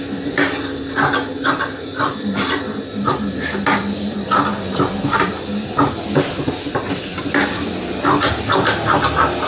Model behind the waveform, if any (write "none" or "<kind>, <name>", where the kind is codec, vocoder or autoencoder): none